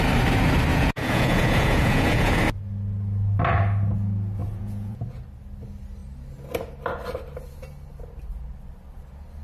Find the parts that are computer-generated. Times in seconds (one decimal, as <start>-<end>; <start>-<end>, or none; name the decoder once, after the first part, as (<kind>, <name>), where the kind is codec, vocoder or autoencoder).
0.7-2.4 (vocoder, Vocos); 4.4-5.2